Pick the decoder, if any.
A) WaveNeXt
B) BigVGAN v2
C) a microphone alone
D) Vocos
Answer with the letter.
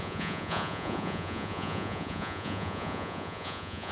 D